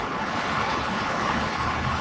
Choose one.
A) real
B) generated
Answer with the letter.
B